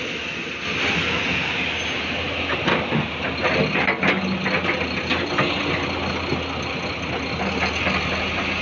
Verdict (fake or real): real